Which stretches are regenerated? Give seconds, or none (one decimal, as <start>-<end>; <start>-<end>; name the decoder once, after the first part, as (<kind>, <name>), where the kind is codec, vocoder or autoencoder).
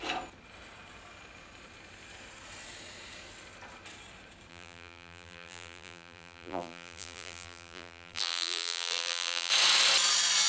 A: 4.5-9.5 (vocoder, BigVGAN v2)